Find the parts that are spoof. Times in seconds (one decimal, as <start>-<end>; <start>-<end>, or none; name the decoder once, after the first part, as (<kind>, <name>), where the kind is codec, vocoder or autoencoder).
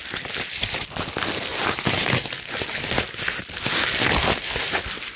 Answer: none